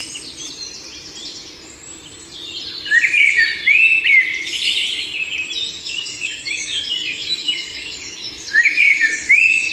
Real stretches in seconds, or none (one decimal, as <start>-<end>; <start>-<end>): 0.0-5.8